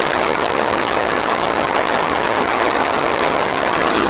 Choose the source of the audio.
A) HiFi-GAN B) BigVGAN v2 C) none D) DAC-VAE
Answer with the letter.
A